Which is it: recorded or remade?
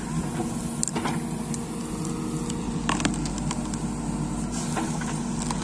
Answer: recorded